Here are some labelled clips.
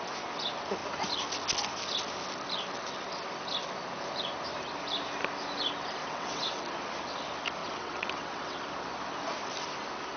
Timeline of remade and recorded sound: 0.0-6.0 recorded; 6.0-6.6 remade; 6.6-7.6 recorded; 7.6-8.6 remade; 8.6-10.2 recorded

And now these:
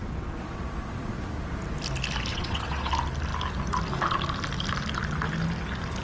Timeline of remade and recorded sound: 0.0-1.1 remade; 1.1-2.3 recorded; 2.3-2.9 remade; 2.9-6.0 recorded

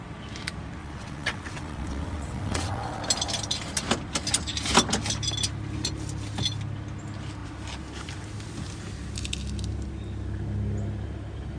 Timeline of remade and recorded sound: 0.0-0.8 recorded; 0.8-3.0 remade; 3.0-11.6 recorded

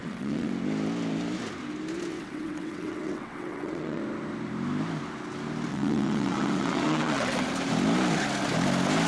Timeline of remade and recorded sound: 0.0-0.5 remade; 0.5-2.1 recorded; 2.1-4.0 remade; 4.0-5.7 recorded; 5.7-7.5 remade; 7.5-9.1 recorded

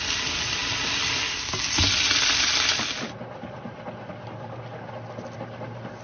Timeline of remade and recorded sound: 0.0-6.0 recorded